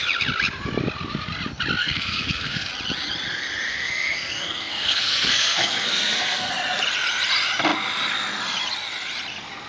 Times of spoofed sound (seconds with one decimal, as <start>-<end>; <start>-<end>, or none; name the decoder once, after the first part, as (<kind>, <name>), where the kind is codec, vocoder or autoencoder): 1.8-2.7 (codec, SNAC); 3.7-6.5